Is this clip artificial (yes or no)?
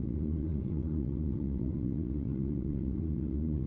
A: yes